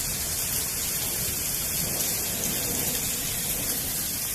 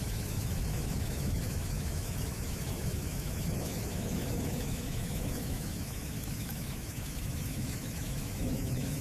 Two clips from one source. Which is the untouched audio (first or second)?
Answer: first